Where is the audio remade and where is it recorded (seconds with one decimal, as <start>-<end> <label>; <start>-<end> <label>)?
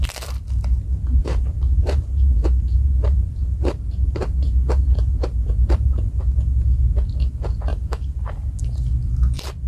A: 0.0-1.2 recorded; 1.2-6.2 remade; 6.2-7.7 recorded; 7.7-8.9 remade; 8.9-9.7 recorded